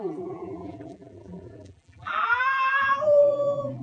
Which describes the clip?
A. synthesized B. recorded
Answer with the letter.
A